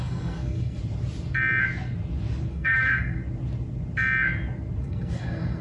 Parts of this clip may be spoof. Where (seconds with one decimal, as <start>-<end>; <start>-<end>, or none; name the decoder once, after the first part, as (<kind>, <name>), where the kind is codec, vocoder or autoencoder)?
0.0-0.8 (codec, SNAC); 2.5-3.2; 4.8-5.6